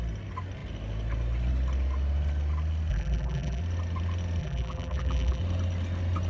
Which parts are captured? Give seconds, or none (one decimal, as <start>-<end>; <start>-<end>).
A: 0.0-2.9; 3.6-4.4; 5.4-6.3

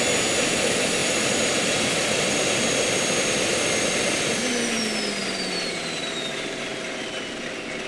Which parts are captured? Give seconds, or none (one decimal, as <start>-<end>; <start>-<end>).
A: 0.0-1.0; 3.6-7.9

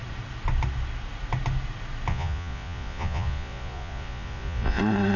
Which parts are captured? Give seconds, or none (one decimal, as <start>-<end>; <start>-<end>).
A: 0.0-2.1; 4.8-5.2

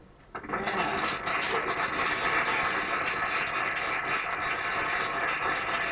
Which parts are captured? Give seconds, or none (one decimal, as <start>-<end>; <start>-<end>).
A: 0.0-5.9